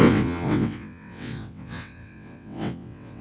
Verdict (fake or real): fake